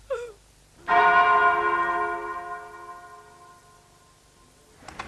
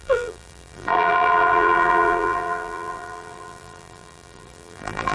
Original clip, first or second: first